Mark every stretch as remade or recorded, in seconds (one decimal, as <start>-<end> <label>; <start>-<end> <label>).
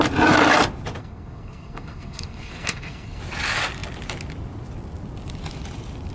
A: 0.0-1.0 recorded; 1.0-3.2 remade; 3.2-6.1 recorded